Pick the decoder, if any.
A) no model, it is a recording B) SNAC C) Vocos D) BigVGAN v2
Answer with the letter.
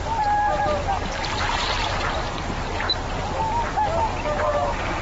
A